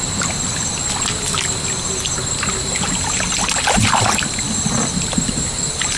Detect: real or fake real